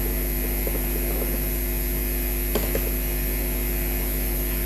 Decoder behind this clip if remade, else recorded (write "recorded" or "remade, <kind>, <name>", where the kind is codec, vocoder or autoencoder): recorded